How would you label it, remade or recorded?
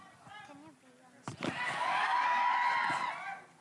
recorded